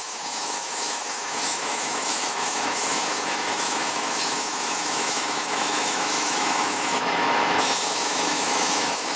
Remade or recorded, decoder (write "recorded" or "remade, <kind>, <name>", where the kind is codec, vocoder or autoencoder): remade, autoencoder, DAC-VAE